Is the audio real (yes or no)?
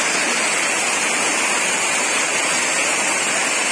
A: yes